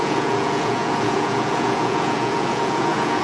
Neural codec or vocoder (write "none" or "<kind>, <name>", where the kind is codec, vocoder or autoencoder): vocoder, Vocos